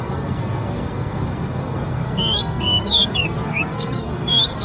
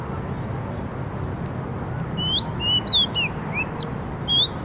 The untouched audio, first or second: second